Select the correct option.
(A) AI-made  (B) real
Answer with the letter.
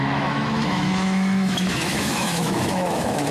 A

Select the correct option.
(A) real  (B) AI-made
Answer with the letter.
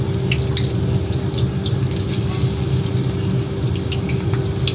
A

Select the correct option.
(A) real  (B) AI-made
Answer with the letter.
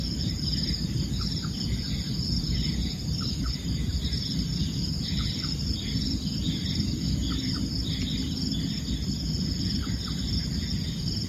B